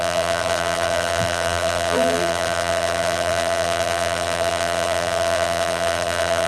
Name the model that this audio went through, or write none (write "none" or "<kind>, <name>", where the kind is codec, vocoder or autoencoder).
vocoder, BigVGAN v2